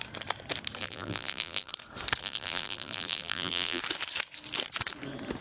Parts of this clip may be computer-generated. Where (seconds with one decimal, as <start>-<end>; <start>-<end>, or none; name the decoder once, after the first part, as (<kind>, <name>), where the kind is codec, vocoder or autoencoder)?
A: 0.8-1.7 (vocoder, BigVGAN v2); 2.2-3.8